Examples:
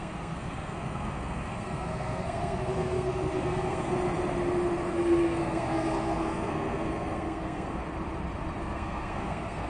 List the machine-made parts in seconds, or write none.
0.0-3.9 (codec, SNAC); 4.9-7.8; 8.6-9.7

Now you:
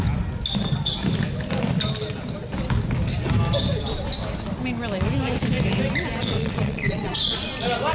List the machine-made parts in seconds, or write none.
6.2-7.5 (vocoder, Vocos)

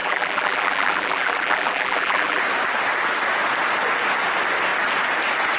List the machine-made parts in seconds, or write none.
0.0-2.4 (vocoder, BigVGAN v2)

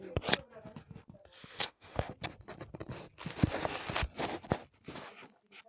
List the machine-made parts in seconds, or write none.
1.4-2.1 (autoencoder, DAC-VAE)

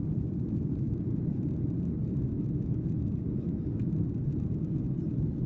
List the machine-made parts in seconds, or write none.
2.3-3.9 (autoencoder, DAC-VAE)

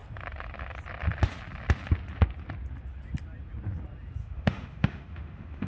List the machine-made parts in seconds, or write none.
4.2-5.7 (autoencoder, DAC-VAE)

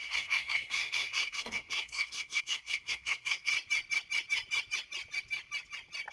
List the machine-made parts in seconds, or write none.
0.0-3.5 (codec, SNAC)

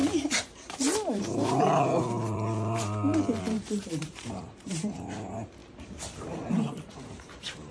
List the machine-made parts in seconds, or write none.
0.0-5.6 (vocoder, BigVGAN v2); 6.9-7.7